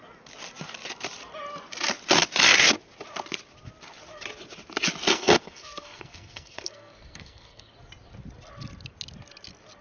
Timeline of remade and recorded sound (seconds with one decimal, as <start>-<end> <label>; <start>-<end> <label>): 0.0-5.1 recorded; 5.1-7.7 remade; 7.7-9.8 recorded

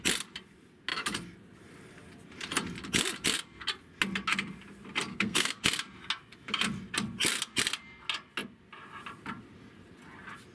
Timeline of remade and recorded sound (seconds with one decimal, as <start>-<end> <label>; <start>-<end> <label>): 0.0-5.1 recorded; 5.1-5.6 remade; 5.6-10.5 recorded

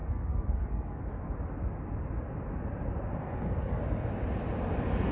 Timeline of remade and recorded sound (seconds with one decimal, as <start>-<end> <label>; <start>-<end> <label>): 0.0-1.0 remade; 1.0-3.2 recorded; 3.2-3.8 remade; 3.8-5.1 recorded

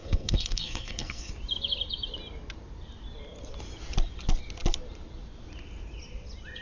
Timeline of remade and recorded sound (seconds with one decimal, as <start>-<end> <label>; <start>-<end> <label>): 0.0-1.3 remade; 1.3-6.6 recorded

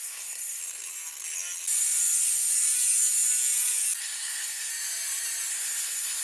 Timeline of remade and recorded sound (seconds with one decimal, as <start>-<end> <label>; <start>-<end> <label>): 0.0-0.6 remade; 0.6-4.0 recorded; 4.0-4.7 remade; 4.7-5.5 recorded; 5.5-6.2 remade